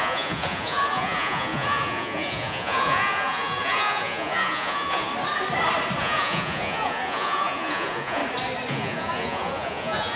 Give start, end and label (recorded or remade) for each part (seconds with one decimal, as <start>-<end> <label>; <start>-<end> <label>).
0.0-5.1 remade; 5.1-6.0 recorded; 6.0-8.2 remade; 8.2-8.7 recorded; 8.7-10.2 remade